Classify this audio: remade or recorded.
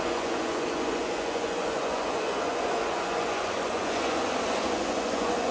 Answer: remade